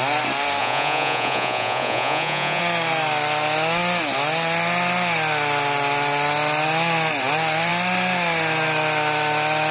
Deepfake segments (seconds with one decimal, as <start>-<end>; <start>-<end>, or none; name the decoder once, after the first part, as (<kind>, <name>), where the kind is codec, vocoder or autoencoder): 0.6-2.6 (vocoder, Vocos)

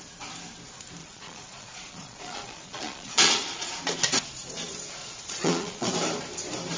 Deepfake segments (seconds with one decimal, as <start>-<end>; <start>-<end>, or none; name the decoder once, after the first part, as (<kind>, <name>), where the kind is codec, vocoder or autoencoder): 1.0-3.7 (vocoder, Vocos); 5.0-5.9

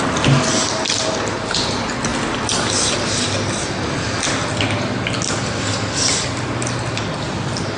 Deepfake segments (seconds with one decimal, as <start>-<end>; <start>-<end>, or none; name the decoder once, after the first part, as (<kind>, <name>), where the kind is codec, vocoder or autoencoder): none

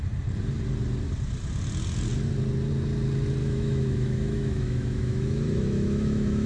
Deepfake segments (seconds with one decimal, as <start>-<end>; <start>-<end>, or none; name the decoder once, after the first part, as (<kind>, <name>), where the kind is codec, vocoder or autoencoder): 3.4-6.5 (autoencoder, DAC-VAE)